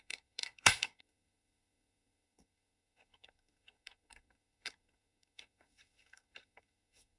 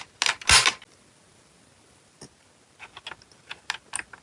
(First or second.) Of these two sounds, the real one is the second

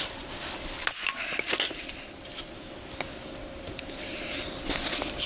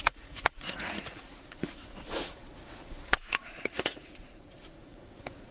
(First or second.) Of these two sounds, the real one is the first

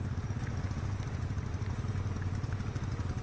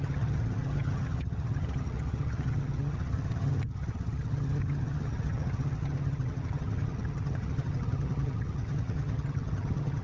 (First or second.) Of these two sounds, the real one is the first